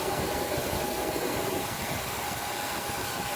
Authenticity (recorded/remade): remade